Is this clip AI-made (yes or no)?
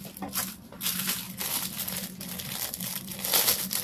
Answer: no